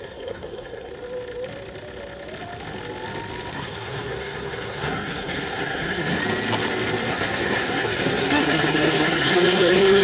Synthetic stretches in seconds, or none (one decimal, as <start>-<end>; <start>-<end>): 0.0-0.9; 3.5-6.2; 7.1-10.0